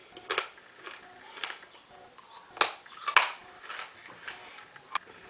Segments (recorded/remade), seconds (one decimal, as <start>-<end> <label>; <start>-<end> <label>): 0.0-5.3 recorded